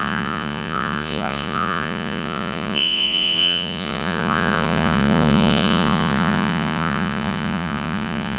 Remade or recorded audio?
remade